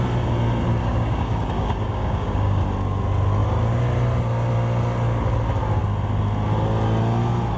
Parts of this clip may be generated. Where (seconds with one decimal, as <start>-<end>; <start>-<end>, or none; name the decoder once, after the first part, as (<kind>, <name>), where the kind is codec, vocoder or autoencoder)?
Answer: 0.8-2.6 (codec, DAC)